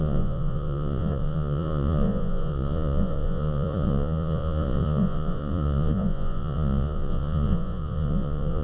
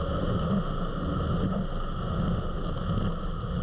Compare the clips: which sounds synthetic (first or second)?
first